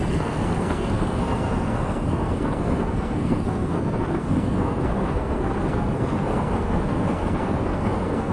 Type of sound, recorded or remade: remade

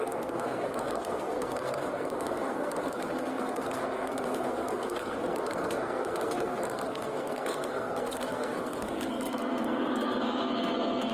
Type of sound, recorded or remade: remade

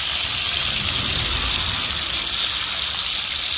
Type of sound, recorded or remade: recorded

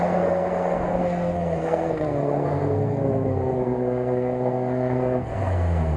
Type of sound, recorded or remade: remade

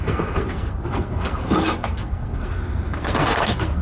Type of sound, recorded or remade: remade